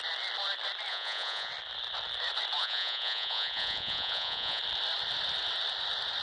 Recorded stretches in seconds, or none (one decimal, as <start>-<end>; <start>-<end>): 0.0-0.9; 1.5-2.6; 4.6-6.2